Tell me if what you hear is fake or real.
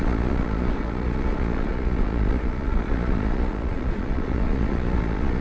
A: fake